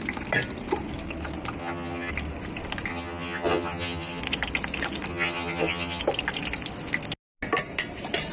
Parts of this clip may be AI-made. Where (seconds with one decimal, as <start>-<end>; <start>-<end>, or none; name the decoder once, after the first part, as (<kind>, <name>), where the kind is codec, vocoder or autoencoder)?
1.6-2.1 (vocoder, HiFi-GAN); 2.9-4.2; 5.1-6.0